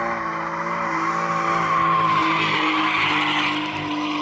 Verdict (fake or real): real